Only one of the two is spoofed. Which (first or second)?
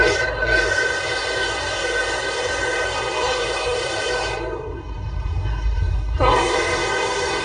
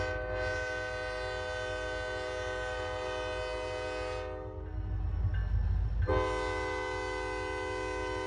first